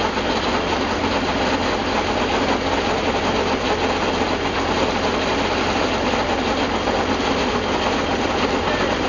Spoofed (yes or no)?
no